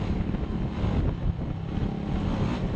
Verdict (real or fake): real